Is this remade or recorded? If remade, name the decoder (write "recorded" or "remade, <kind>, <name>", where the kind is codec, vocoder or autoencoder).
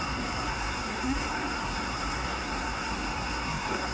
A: remade, codec, SNAC